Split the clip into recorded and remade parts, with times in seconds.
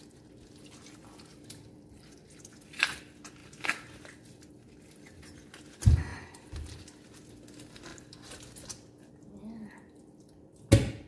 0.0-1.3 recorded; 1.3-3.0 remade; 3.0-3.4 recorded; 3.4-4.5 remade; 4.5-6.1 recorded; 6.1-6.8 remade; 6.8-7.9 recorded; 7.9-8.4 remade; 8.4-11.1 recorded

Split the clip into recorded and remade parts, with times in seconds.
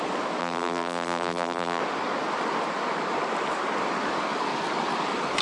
0.0-0.4 recorded; 0.4-1.8 remade; 1.8-5.4 recorded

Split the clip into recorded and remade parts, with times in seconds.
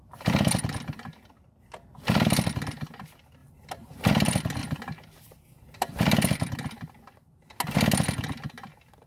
0.0-9.1 recorded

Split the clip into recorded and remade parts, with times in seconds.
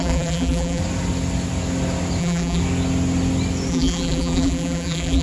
0.0-0.8 remade; 0.8-2.2 recorded; 2.2-2.6 remade; 2.6-3.7 recorded; 3.7-5.2 remade